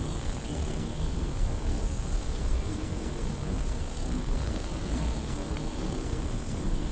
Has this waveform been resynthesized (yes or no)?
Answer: yes